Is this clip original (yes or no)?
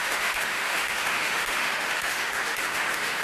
no